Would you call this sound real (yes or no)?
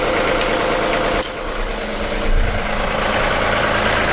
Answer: yes